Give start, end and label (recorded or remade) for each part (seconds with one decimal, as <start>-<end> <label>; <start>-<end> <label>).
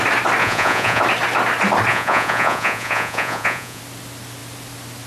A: 0.0-0.4 recorded; 0.4-1.0 remade; 1.0-1.9 recorded; 1.9-3.8 remade; 3.8-5.1 recorded